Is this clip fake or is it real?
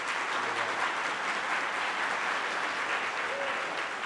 real